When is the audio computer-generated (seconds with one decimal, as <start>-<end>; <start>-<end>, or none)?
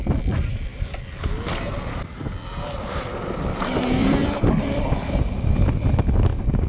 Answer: 0.7-1.7; 4.0-5.9